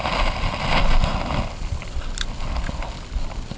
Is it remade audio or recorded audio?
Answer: recorded